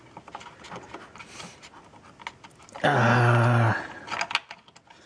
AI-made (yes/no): no